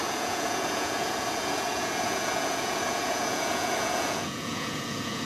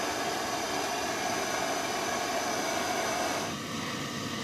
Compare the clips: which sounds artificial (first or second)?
first